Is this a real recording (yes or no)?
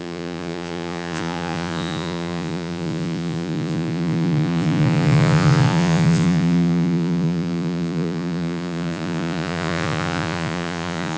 no